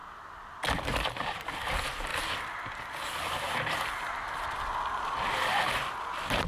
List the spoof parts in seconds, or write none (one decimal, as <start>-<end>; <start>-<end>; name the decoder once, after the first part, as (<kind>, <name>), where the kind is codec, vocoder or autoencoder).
1.2-2.1 (vocoder, BigVGAN v2); 6.0-6.5